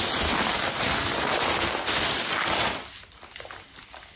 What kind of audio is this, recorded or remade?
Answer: recorded